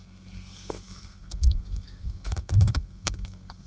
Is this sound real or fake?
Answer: fake